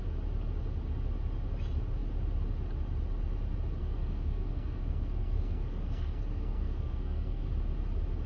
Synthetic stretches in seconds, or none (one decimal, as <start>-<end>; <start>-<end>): 3.8-7.5